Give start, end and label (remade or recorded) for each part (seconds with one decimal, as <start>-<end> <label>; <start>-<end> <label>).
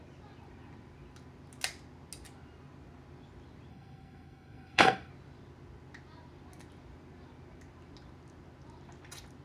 0.0-3.7 recorded; 3.7-5.1 remade; 5.1-9.4 recorded